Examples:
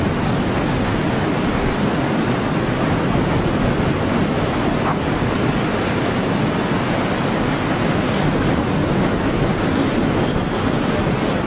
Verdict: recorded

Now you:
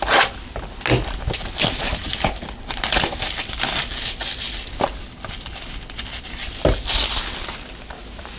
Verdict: recorded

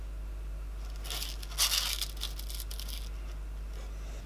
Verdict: recorded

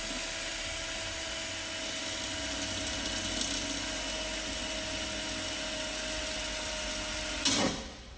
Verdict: recorded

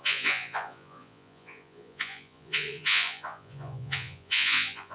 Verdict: remade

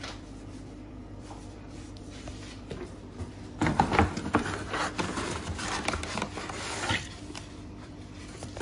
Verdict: remade